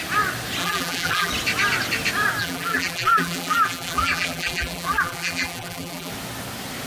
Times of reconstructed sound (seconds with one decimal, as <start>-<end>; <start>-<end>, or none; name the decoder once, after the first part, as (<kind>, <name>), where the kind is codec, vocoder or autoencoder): 0.6-1.3 (vocoder, BigVGAN v2); 2.4-6.1